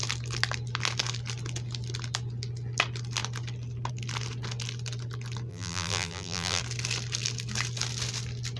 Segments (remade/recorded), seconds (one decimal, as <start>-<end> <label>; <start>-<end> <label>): 0.0-5.5 recorded; 5.5-6.6 remade; 6.6-8.6 recorded